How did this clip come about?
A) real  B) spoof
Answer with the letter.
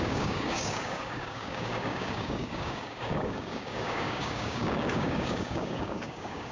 B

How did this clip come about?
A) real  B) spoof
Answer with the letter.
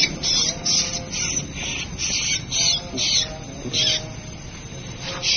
A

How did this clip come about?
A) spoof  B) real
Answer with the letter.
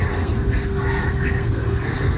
A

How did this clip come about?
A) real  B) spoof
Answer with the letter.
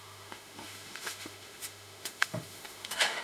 B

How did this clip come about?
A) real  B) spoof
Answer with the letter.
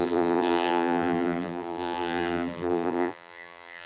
B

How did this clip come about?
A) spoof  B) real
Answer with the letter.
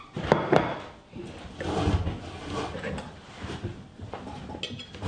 B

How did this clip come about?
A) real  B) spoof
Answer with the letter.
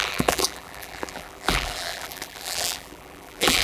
B